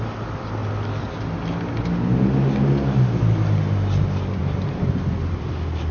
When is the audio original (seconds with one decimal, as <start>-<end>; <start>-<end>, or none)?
0.0-4.4; 5.5-5.9